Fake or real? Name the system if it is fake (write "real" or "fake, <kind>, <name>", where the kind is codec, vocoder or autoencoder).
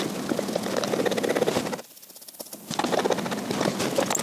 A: real